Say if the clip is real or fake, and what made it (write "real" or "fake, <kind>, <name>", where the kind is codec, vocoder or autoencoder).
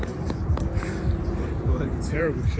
fake, vocoder, BigVGAN v2